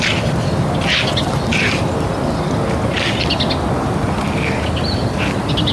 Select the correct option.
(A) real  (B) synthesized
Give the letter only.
A